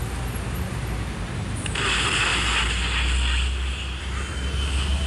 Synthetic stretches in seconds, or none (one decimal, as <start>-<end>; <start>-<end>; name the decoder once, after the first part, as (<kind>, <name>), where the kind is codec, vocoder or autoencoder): none